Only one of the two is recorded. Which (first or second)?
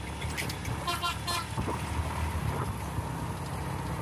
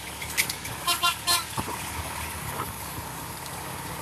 first